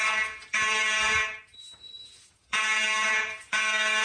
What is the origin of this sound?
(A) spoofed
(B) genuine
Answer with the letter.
A